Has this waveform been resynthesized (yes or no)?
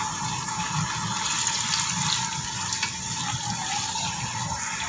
no